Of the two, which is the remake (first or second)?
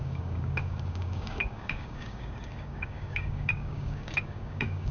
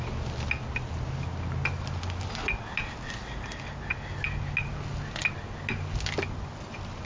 first